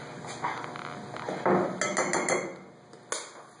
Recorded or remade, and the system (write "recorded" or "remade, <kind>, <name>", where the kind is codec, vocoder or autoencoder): recorded